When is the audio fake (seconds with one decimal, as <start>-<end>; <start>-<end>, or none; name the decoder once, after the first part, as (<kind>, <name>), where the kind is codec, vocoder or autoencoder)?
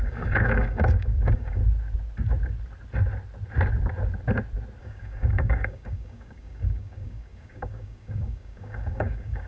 0.0-1.6 (codec, DAC); 4.8-9.5